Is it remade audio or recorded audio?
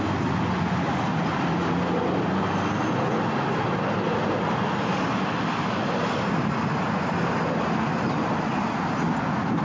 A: recorded